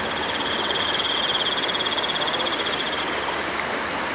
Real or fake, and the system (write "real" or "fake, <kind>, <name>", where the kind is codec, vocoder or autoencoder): real